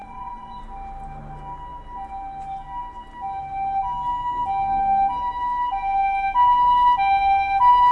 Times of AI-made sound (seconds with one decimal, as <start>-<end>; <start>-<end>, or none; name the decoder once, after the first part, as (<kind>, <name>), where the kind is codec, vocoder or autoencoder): 0.0-0.6 (vocoder, WaveNeXt)